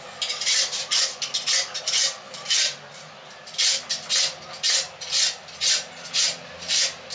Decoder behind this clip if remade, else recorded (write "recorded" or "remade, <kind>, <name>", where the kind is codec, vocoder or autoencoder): recorded